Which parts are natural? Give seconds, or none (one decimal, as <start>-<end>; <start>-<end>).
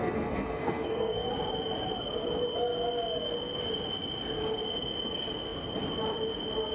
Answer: 1.3-6.7